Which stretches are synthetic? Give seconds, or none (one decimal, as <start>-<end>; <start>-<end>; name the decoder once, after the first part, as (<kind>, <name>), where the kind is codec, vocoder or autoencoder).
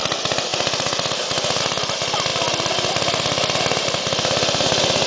none